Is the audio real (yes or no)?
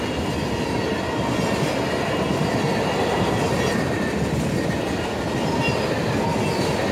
yes